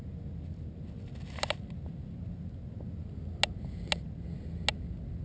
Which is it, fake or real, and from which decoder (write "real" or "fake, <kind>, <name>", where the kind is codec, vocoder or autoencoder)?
real